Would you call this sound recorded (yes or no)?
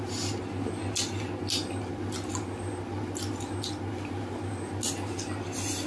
yes